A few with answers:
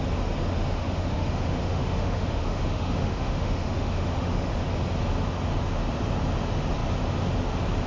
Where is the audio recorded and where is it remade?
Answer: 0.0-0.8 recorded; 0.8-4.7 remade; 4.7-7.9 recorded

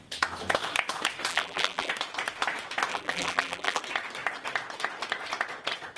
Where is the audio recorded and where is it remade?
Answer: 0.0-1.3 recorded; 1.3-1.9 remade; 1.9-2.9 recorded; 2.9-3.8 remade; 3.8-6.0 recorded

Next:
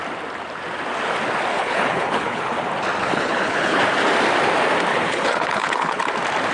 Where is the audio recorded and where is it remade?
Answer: 0.0-1.5 recorded; 1.5-2.4 remade; 2.4-3.0 recorded; 3.0-3.8 remade; 3.8-4.9 recorded; 4.9-6.0 remade; 6.0-6.5 recorded

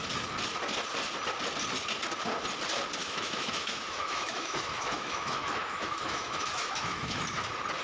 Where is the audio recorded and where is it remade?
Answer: 0.0-3.0 recorded; 3.0-7.2 remade; 7.2-7.8 recorded